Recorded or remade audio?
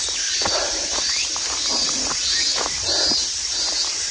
recorded